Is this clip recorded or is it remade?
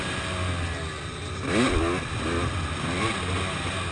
recorded